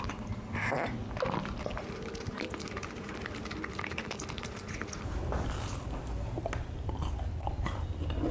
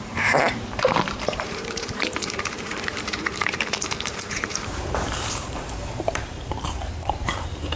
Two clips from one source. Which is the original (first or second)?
first